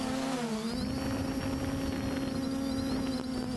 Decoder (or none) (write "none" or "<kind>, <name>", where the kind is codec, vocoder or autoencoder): none